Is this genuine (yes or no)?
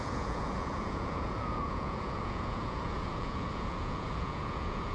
no